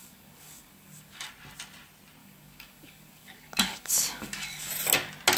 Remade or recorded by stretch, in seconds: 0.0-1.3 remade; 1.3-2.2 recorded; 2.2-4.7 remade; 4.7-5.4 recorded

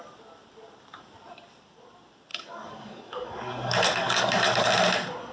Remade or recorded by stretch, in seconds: 0.0-2.3 recorded; 2.3-4.7 remade; 4.7-5.3 recorded